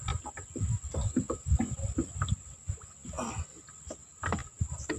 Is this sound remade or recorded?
recorded